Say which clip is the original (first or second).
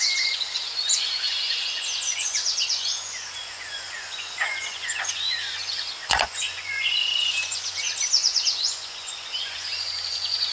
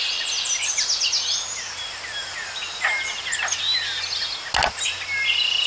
second